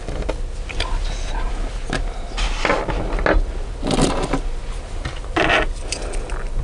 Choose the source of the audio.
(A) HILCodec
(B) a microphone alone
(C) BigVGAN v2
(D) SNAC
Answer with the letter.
B